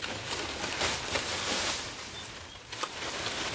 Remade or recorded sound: recorded